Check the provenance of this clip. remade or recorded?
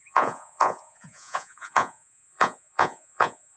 remade